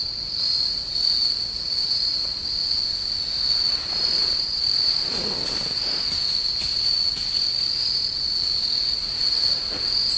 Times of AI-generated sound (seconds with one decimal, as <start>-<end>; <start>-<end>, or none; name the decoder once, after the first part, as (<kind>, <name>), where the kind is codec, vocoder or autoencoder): 0.0-2.4 (vocoder, Vocos); 9.0-9.5

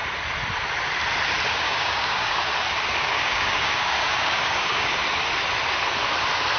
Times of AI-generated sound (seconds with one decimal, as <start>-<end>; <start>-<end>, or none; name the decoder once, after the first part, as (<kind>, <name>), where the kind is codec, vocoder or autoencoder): 1.5-2.5 (codec, DAC); 3.0-5.0

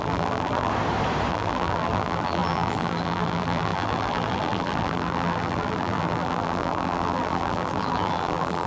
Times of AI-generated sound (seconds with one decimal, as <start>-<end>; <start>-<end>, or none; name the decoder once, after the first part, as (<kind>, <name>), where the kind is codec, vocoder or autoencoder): 0.0-0.7 (vocoder, BigVGAN v2); 1.3-8.7